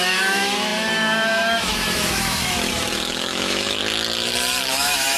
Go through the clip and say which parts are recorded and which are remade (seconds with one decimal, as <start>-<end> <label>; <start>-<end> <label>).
0.0-3.8 remade; 3.8-4.7 recorded; 4.7-5.2 remade